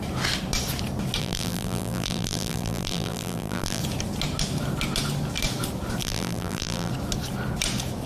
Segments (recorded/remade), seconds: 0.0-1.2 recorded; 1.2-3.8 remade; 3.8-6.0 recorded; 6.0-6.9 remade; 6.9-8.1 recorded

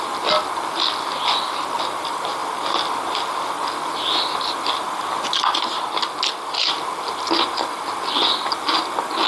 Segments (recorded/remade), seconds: 0.0-9.3 recorded

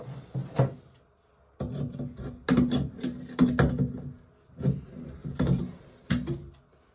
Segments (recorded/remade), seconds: 0.0-5.2 recorded; 5.2-5.9 remade; 5.9-6.9 recorded